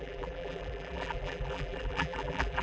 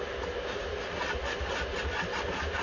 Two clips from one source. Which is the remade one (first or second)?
first